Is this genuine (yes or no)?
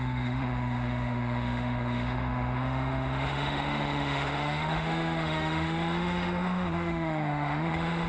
no